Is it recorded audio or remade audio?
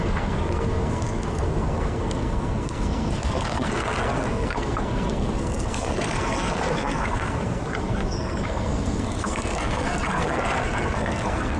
remade